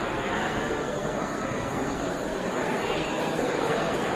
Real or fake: fake